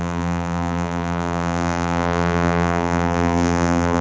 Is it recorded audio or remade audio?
remade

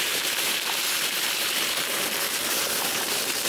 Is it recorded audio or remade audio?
remade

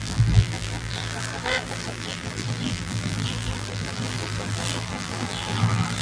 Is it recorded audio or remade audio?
remade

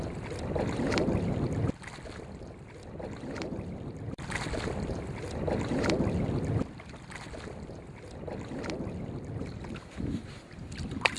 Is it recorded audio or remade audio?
remade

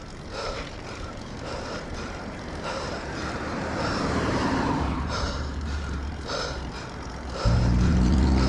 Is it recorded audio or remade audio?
remade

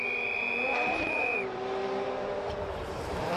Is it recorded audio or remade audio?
remade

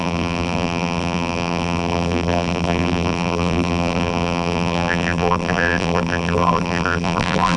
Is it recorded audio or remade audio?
remade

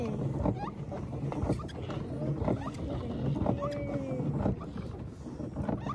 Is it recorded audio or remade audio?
recorded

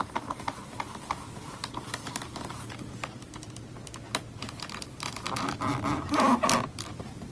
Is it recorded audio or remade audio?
remade